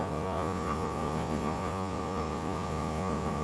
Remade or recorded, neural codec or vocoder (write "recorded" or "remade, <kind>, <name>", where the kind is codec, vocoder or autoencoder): remade, vocoder, Vocos